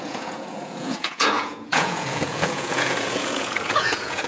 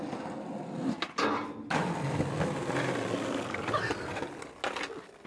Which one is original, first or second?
second